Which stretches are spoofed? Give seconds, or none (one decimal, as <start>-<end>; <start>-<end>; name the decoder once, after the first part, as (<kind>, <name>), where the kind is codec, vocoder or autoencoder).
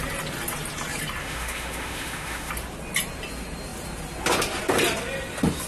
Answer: 1.2-2.5 (autoencoder, DAC-VAE)